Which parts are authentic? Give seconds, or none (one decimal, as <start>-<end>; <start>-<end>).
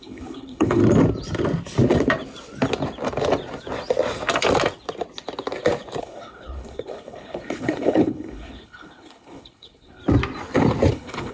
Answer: 0.8-6.0; 10.0-10.9